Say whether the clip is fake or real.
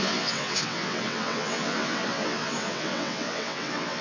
fake